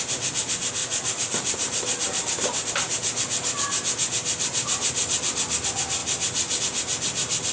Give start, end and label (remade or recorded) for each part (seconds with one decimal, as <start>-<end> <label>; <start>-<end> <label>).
0.0-0.8 recorded; 0.8-2.7 remade; 2.7-7.5 recorded